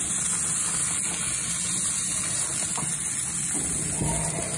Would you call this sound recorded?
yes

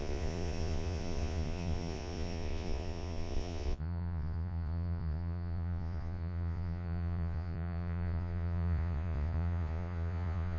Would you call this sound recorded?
no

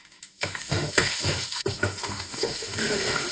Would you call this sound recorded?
no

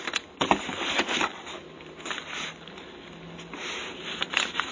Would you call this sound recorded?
yes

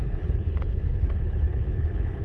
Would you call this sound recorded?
no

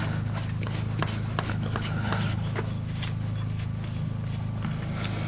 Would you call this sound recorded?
yes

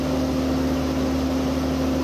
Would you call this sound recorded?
yes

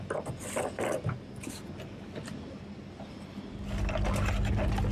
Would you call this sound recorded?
yes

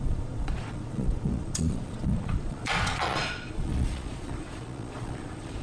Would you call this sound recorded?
no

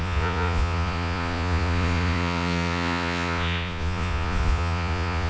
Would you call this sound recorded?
no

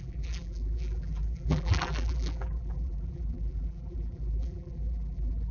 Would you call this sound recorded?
no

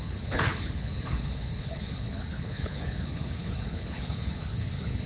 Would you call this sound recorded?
no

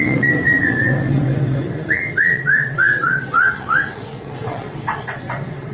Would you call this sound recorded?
no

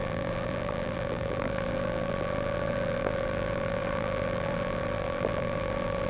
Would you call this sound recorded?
no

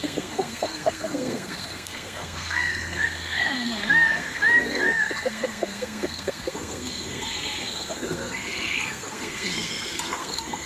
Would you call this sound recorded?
no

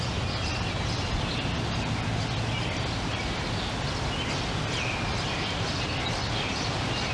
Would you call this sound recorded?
yes